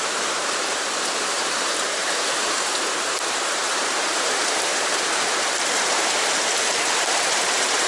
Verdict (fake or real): fake